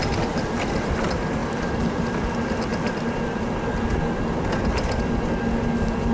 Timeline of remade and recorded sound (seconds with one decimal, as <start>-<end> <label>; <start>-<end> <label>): 0.0-6.1 recorded

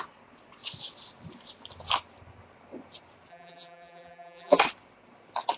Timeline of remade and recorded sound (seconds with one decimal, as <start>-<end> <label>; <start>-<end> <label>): 0.0-3.3 recorded; 3.3-4.6 remade; 4.6-5.6 recorded